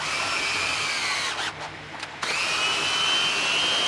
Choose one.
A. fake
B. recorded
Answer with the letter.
B